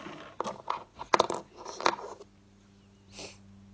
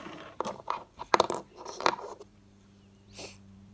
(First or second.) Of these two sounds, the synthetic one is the second